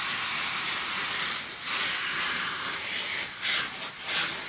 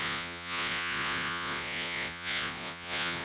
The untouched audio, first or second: first